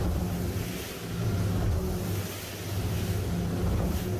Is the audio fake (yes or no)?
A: no